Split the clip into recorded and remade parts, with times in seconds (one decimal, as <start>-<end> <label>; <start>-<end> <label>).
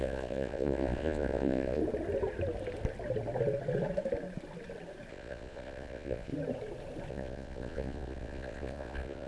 0.0-1.8 remade; 1.8-5.1 recorded; 5.1-6.3 remade; 6.3-7.1 recorded; 7.1-9.3 remade